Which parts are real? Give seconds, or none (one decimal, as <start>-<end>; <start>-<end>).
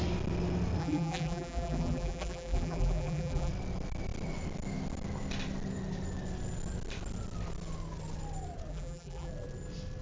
0.0-0.8; 3.5-8.7; 9.3-10.0